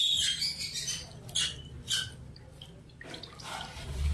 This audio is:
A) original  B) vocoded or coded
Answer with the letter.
A